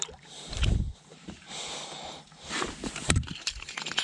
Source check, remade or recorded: remade